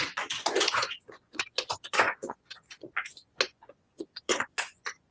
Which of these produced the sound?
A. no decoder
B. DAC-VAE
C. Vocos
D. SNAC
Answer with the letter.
C